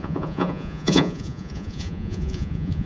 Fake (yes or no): yes